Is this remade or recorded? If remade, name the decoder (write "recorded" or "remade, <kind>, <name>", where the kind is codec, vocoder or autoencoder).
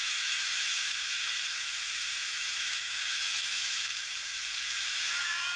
remade, autoencoder, DAC-VAE